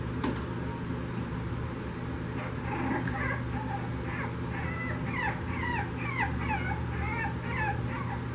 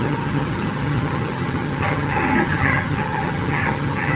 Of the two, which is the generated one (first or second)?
second